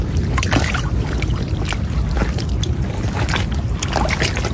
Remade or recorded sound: recorded